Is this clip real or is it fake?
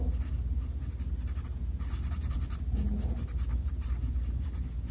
real